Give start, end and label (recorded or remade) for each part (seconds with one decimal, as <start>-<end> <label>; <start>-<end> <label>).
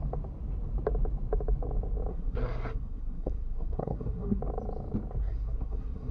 0.0-2.1 recorded; 2.1-4.4 remade; 4.4-5.2 recorded; 5.2-6.1 remade